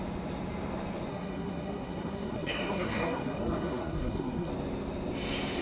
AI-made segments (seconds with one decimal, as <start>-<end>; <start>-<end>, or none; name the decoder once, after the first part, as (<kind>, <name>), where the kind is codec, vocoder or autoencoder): 1.1-4.5 (codec, SNAC)